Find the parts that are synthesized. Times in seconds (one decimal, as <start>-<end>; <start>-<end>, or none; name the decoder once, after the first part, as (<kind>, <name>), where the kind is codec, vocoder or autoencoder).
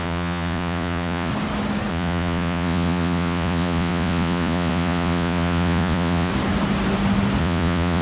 0.0-1.3 (vocoder, Vocos); 1.9-6.3; 7.4-8.0